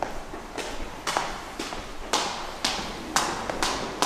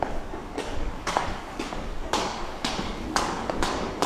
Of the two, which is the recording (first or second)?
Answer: first